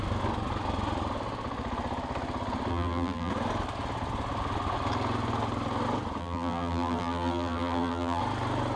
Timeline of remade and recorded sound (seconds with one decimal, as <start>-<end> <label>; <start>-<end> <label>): 0.0-2.7 recorded; 2.7-3.3 remade; 3.3-6.2 recorded; 6.2-8.2 remade; 8.2-8.8 recorded